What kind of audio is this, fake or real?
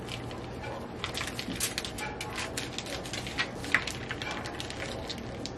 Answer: real